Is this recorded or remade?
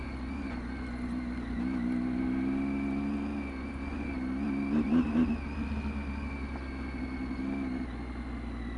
recorded